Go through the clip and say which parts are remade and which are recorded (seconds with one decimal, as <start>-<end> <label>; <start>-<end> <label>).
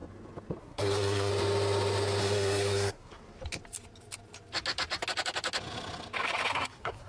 0.0-0.6 recorded; 0.6-1.3 remade; 1.3-2.2 recorded; 2.2-3.2 remade; 3.2-6.5 recorded; 6.5-7.1 remade